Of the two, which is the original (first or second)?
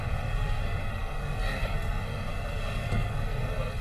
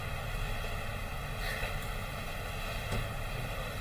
second